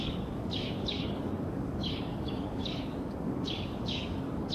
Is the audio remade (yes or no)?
yes